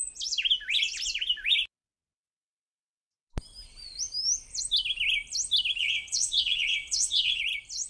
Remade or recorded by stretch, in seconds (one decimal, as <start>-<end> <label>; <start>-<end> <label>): 0.0-5.8 recorded; 5.8-7.4 remade; 7.4-7.9 recorded